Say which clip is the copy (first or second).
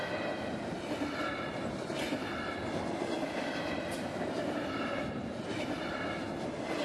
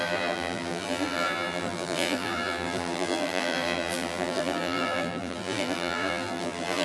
second